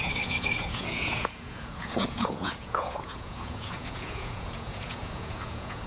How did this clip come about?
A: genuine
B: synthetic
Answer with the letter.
B